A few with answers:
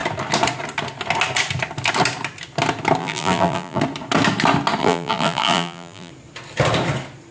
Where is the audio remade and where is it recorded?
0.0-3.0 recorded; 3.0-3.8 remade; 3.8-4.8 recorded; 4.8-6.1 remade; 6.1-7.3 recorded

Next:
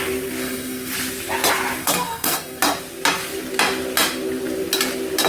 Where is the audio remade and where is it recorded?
0.0-0.4 recorded; 0.4-0.9 remade; 0.9-1.8 recorded; 1.8-2.6 remade; 2.6-5.3 recorded